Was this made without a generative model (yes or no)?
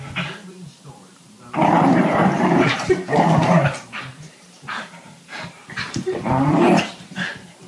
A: no